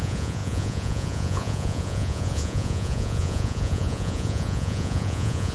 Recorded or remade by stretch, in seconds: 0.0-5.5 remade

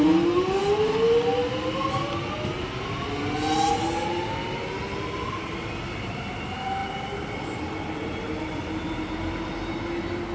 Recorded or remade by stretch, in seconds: 0.0-10.3 recorded

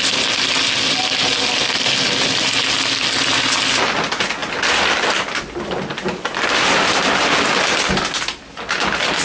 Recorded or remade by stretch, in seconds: 0.0-9.2 recorded

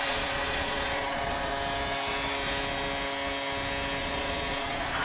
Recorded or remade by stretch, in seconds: 0.0-1.5 remade; 1.5-4.0 recorded; 4.0-5.0 remade

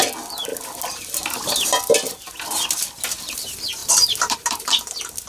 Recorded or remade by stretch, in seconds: 0.0-0.5 remade; 0.5-1.9 recorded; 1.9-5.3 remade

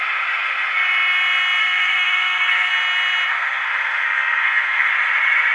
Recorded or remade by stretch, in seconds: 0.0-1.6 recorded; 1.6-2.7 remade; 2.7-3.3 recorded; 3.3-4.9 remade; 4.9-5.5 recorded

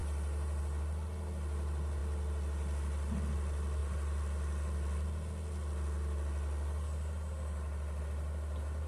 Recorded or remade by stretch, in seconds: 0.0-8.9 recorded

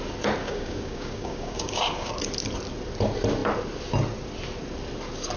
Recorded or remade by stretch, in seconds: 0.0-0.4 recorded; 0.4-2.1 remade; 2.1-5.4 recorded